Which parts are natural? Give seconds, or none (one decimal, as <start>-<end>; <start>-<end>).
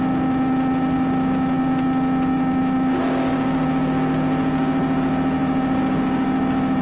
0.0-6.8